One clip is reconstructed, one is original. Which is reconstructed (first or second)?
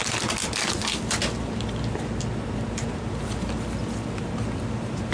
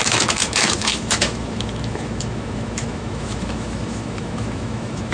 second